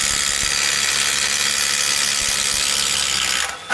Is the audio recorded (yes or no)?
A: yes